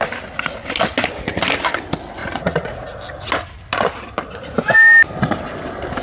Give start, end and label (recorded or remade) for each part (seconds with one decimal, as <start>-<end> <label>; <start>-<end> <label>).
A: 0.0-2.2 recorded; 2.2-3.0 remade; 3.0-6.0 recorded